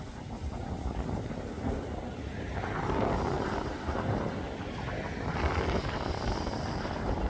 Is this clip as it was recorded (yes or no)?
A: yes